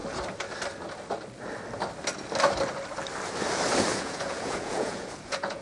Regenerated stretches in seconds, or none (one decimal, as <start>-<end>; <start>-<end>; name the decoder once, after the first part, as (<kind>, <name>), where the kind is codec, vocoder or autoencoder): 3.9-5.6 (vocoder, Vocos)